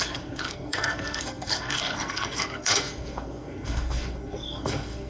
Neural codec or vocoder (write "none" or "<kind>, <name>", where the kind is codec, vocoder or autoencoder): codec, SNAC